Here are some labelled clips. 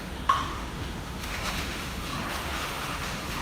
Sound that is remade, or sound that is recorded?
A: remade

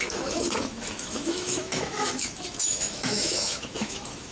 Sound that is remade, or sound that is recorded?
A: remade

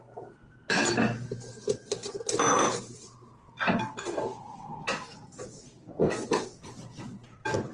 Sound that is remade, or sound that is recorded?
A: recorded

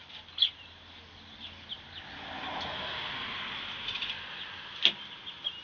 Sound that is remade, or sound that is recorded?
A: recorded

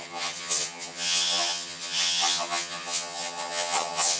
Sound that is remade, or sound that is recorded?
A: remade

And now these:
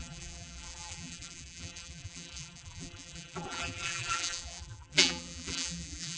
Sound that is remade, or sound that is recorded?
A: remade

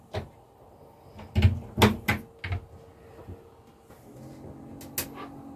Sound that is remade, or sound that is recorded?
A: recorded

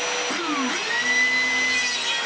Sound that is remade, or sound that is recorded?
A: recorded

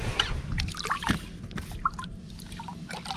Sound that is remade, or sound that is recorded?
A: recorded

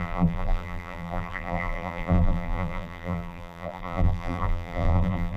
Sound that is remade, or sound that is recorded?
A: remade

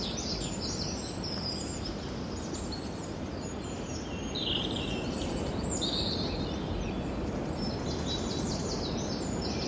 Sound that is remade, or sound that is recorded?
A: recorded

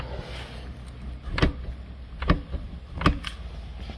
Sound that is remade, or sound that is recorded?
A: recorded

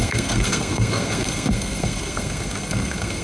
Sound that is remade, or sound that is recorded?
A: remade